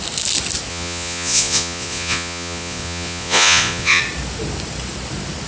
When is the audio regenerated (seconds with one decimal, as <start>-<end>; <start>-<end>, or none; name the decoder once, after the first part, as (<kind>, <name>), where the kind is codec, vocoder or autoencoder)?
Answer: 0.7-4.0 (vocoder, Vocos)